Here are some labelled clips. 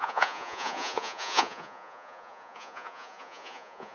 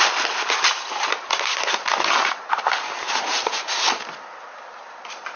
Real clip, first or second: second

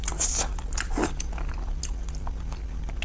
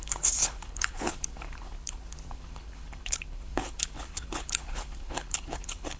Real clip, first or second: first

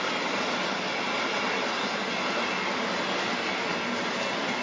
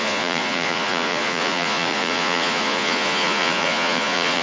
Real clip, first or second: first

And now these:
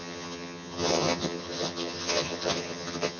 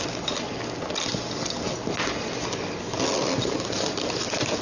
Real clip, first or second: second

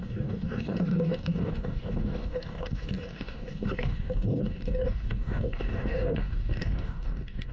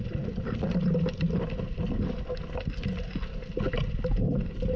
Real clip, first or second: second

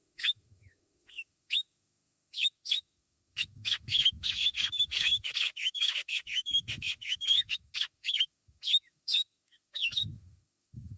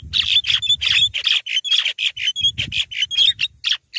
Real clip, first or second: second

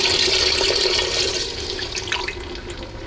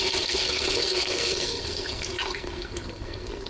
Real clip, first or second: first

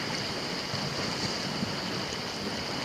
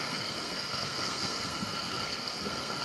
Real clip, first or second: first